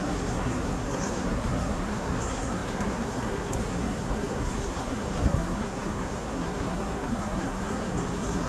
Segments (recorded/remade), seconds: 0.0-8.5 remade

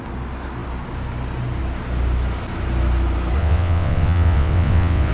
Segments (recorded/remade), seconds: 0.0-3.4 recorded; 3.4-5.1 remade